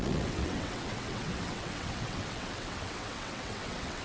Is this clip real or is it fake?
fake